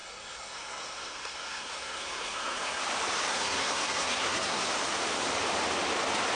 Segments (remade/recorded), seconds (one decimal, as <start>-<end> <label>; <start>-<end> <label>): 0.0-2.8 remade; 2.8-3.3 recorded; 3.3-4.6 remade; 4.6-6.4 recorded